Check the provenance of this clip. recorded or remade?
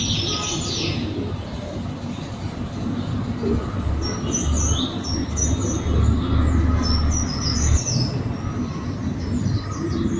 recorded